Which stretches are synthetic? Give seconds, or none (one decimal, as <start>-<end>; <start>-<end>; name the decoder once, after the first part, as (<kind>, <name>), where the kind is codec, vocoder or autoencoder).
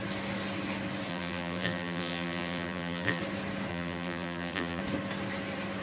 1.1-3.2 (vocoder, BigVGAN v2); 3.7-4.8